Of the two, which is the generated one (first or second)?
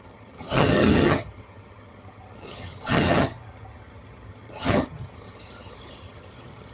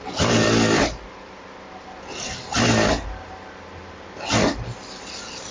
first